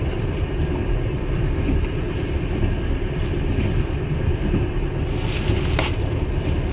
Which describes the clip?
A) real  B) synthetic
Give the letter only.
B